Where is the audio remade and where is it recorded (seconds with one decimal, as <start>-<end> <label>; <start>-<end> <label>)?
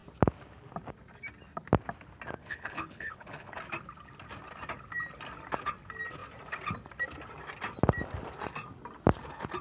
0.0-2.4 recorded; 2.4-3.6 remade; 3.6-9.6 recorded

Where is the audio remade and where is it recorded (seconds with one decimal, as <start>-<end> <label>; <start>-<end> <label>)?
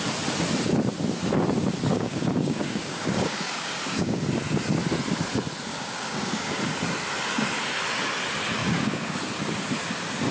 0.0-1.9 recorded; 1.9-4.2 remade; 4.2-5.7 recorded; 5.7-6.6 remade; 6.6-8.6 recorded; 8.6-9.2 remade; 9.2-10.3 recorded